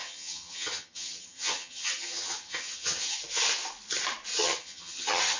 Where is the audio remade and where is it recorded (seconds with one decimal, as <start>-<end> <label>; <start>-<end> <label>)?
0.0-3.2 remade; 3.2-4.3 recorded; 4.3-5.4 remade